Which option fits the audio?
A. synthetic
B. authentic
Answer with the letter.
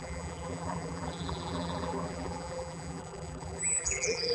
A